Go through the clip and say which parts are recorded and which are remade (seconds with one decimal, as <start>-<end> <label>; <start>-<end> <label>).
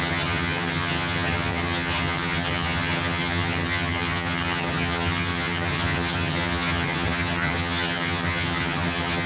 0.0-9.3 remade